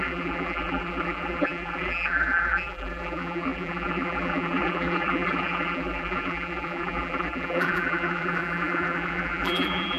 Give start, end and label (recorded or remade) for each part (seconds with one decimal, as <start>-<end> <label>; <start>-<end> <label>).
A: 0.0-10.0 remade

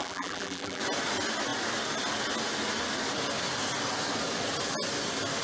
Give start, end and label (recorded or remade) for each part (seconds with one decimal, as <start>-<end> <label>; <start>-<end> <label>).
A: 0.0-0.8 remade; 0.8-5.4 recorded

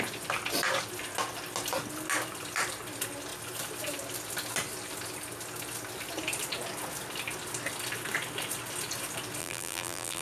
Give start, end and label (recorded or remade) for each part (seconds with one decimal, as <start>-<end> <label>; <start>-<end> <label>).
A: 0.0-9.4 recorded; 9.4-10.2 remade

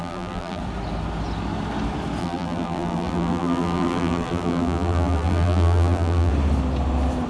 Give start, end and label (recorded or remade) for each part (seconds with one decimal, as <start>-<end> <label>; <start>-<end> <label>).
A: 0.0-0.6 remade; 0.6-2.2 recorded; 2.2-6.3 remade; 6.3-7.3 recorded

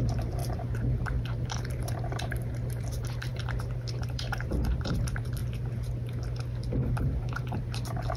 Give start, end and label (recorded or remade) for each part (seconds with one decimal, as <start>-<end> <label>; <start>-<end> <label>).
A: 0.0-3.3 remade; 3.3-3.9 recorded; 3.9-5.4 remade; 5.4-7.0 recorded; 7.0-8.2 remade